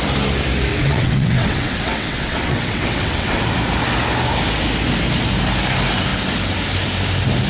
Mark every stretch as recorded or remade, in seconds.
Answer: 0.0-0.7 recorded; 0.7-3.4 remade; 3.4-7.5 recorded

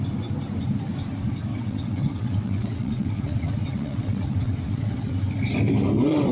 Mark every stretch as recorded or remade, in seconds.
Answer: 0.0-1.5 recorded; 1.5-5.3 remade; 5.3-6.3 recorded